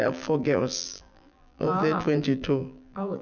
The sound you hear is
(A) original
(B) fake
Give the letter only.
B